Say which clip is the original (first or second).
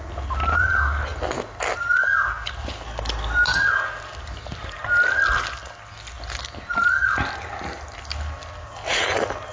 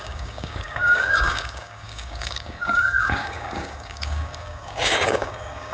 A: first